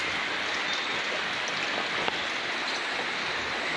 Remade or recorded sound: recorded